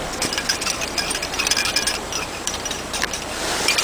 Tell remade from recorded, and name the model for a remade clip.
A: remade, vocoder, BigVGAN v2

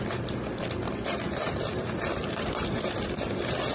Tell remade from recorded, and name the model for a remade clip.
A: remade, vocoder, BigVGAN v2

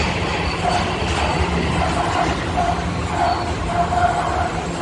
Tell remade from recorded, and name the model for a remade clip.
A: recorded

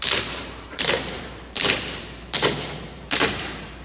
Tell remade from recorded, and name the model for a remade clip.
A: remade, vocoder, BigVGAN v2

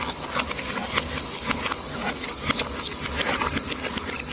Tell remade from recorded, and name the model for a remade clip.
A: recorded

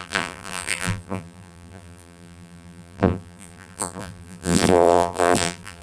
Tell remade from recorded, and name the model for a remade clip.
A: remade, vocoder, BigVGAN v2